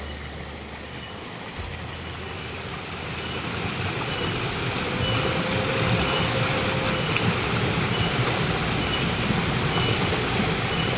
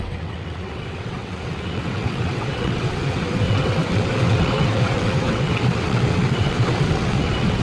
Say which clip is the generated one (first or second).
second